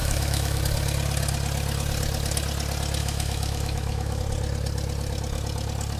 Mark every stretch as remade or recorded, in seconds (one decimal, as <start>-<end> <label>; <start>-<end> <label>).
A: 0.0-0.6 remade; 0.6-3.0 recorded; 3.0-4.2 remade; 4.2-6.0 recorded